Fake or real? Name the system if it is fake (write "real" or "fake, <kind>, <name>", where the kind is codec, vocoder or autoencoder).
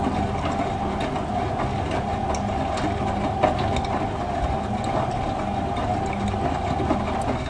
real